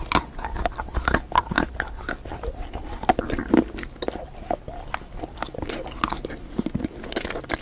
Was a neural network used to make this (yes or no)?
no